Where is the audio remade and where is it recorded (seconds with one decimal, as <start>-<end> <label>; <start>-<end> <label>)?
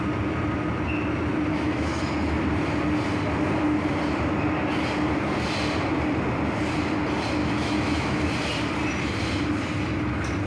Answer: 0.0-1.5 recorded; 1.5-2.0 remade; 2.0-7.4 recorded; 7.4-8.2 remade; 8.2-10.5 recorded